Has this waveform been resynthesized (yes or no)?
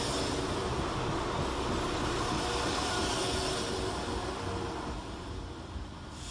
no